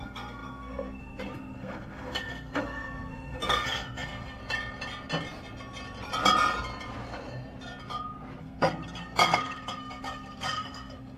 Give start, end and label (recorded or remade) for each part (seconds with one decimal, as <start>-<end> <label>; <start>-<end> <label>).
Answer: 0.0-4.4 remade; 4.4-8.4 recorded; 8.4-11.2 remade

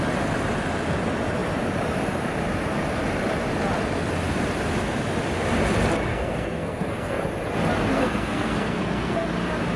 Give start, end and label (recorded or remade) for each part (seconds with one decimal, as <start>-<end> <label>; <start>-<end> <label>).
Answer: 0.0-6.1 recorded; 6.1-7.2 remade; 7.2-7.9 recorded; 7.9-9.3 remade; 9.3-9.8 recorded

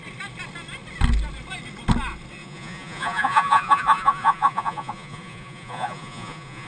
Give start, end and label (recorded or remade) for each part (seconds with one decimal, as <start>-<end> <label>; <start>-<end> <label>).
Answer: 0.0-2.4 recorded; 2.4-6.7 remade

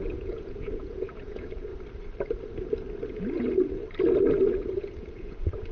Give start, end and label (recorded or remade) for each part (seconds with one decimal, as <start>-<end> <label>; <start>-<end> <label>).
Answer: 0.0-1.7 remade; 1.7-3.1 recorded; 3.1-3.8 remade; 3.8-4.5 recorded; 4.5-5.7 remade